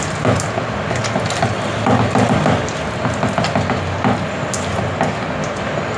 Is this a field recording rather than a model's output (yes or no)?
yes